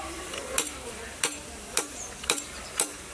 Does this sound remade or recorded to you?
remade